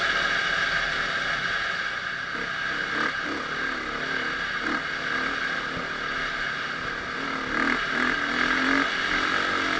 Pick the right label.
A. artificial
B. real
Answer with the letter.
B